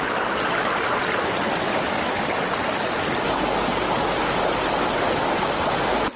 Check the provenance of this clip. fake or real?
real